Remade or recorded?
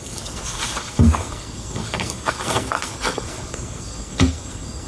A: remade